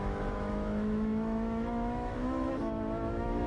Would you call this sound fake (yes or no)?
yes